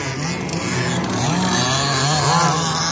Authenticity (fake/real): real